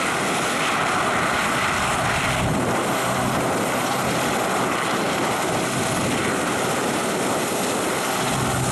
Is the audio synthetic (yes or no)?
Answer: no